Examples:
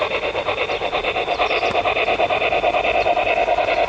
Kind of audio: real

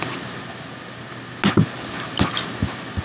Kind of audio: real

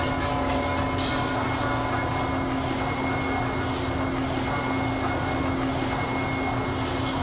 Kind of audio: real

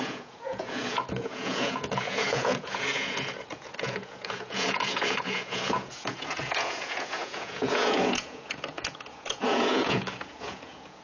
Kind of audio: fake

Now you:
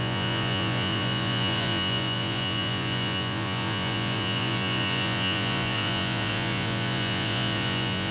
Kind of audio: fake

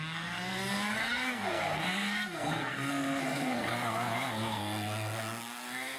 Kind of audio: fake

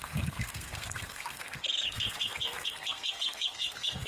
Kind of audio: fake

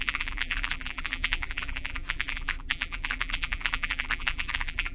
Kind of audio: fake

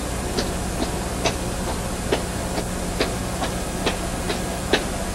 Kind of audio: real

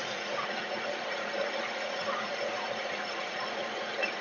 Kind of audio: fake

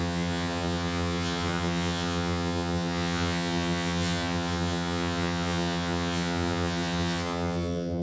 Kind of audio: fake